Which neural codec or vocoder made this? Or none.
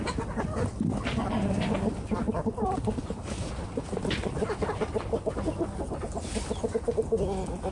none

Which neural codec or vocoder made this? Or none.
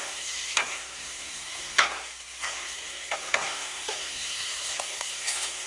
codec, SNAC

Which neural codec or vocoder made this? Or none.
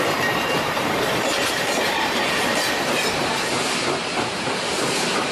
vocoder, BigVGAN v2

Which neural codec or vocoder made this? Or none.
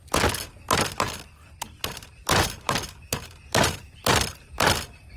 none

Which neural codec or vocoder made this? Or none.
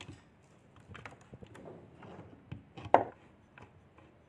none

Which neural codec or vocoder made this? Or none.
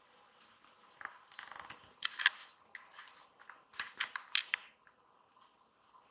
none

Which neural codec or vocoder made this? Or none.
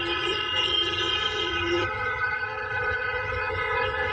vocoder, HiFi-GAN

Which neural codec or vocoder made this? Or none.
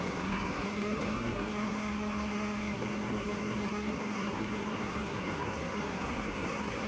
codec, SNAC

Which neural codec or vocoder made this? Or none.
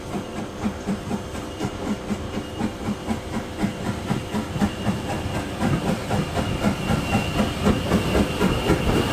none